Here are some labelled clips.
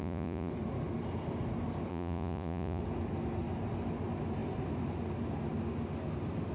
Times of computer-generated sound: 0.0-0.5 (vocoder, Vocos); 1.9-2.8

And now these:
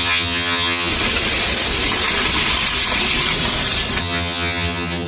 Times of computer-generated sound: 0.0-0.9 (vocoder, HiFi-GAN); 4.0-5.1

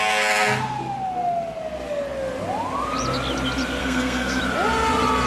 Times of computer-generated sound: 3.8-4.4 (codec, SNAC)

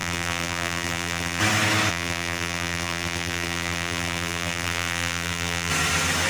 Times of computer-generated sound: 0.0-1.4 (vocoder, BigVGAN v2); 1.9-5.7

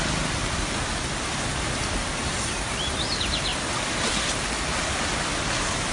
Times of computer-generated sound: 0.4-3.0 (vocoder, BigVGAN v2); 3.5-4.2